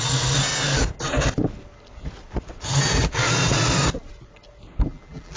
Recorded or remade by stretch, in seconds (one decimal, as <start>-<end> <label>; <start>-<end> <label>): 0.0-4.9 recorded; 4.9-5.4 remade